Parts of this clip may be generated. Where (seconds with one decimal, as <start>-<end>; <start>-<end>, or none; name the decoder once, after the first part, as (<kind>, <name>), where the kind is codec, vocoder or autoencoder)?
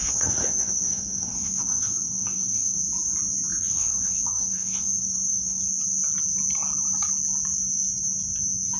0.0-2.8 (autoencoder, DAC-VAE); 3.6-5.6